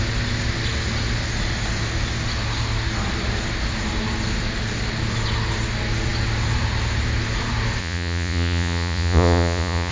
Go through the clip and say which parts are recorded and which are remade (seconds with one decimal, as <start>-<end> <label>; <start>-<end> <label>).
0.0-7.8 recorded; 7.8-9.9 remade